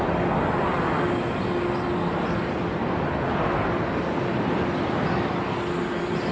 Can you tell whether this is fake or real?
real